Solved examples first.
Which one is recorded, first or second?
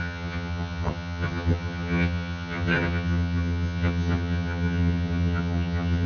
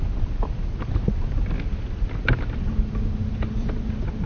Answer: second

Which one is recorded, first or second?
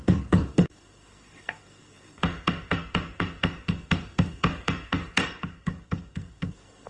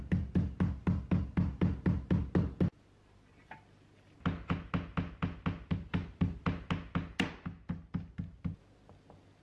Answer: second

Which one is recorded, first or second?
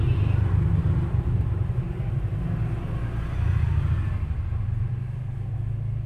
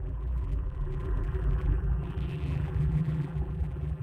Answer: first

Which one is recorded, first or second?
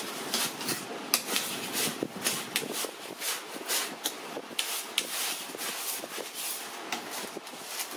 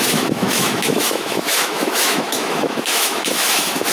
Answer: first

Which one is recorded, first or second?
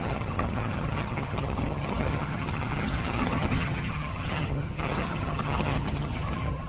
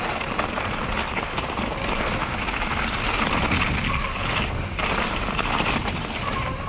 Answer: second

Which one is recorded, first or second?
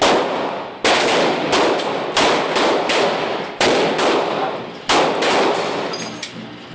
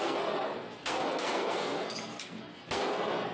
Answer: first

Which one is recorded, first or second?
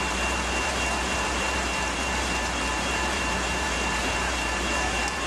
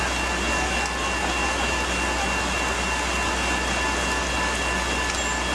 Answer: second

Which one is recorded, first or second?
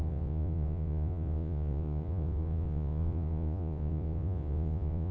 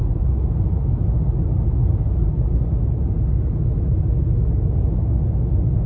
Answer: second